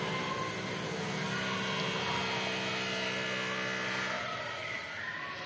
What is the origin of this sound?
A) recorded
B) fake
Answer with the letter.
A